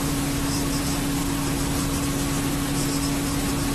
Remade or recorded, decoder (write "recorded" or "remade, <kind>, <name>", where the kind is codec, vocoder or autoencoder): recorded